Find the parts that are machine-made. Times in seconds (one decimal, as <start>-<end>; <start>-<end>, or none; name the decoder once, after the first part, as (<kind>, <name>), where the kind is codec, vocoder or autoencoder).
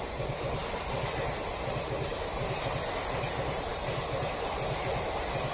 none